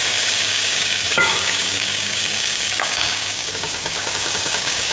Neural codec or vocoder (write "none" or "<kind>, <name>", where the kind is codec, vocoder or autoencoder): codec, DAC